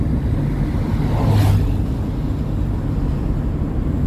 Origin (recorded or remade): recorded